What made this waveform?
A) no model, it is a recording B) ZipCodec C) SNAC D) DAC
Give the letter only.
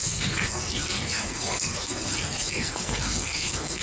C